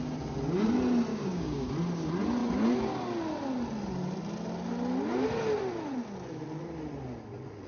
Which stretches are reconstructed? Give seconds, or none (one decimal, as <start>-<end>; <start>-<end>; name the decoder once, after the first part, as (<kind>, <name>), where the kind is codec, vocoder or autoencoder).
1.1-1.7 (codec, DAC)